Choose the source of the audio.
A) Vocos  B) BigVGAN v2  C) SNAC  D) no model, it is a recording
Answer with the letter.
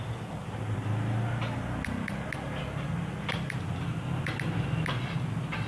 D